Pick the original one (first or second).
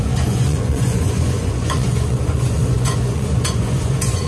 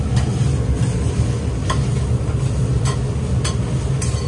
second